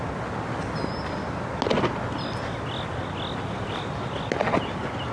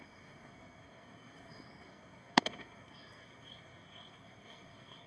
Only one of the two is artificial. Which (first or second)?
second